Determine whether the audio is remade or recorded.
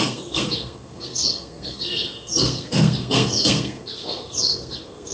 remade